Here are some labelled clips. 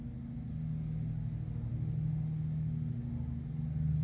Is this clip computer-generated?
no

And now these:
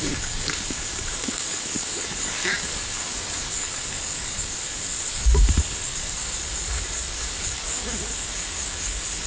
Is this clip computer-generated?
yes